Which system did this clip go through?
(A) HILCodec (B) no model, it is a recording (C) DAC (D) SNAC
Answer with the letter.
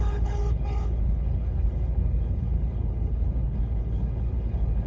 A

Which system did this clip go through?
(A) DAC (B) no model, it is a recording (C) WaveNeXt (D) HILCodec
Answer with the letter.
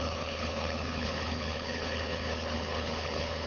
D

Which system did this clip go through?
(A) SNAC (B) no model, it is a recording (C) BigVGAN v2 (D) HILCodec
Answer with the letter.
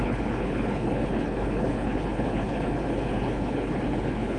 D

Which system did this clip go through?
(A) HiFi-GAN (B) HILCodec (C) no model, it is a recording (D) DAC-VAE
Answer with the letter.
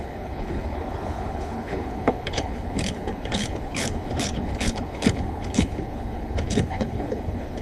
B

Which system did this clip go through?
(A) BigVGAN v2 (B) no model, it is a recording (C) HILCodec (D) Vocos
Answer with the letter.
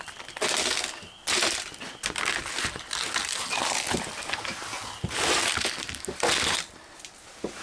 B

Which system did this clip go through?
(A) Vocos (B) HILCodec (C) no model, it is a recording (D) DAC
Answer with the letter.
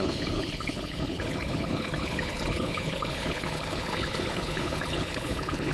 B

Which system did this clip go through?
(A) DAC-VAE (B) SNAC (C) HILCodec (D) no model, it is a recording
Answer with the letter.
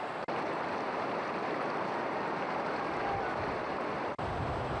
D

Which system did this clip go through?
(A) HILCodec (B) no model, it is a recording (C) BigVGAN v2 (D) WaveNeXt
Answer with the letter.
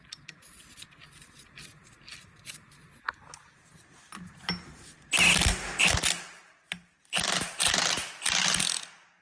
B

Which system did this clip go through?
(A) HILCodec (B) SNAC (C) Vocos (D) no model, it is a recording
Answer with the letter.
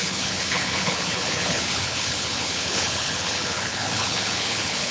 A